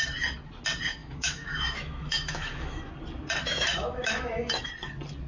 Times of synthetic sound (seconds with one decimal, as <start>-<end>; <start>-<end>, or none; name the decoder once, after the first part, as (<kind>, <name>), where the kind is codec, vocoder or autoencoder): 1.0-2.9 (autoencoder, DAC-VAE); 3.4-4.7